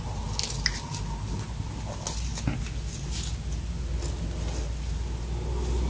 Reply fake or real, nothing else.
real